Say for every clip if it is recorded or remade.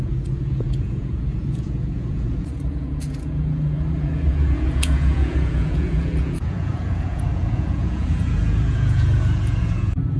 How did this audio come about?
remade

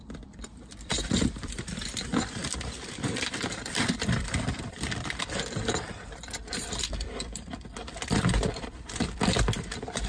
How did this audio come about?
remade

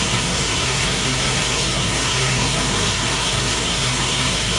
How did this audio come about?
remade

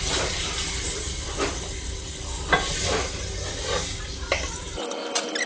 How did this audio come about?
recorded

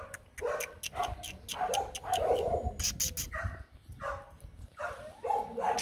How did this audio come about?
recorded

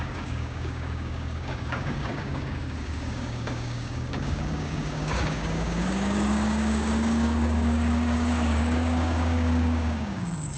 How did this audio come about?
remade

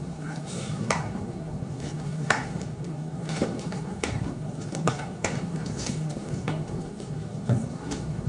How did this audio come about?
remade